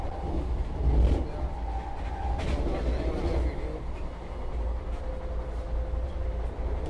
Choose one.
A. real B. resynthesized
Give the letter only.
A